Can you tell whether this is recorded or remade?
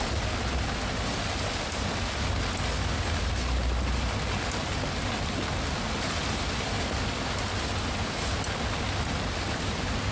recorded